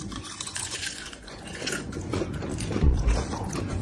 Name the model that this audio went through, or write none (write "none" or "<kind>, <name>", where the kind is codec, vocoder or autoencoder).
vocoder, Vocos